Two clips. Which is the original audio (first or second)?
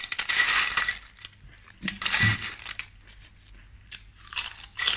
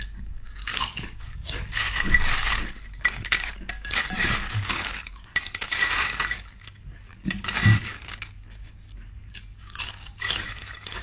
first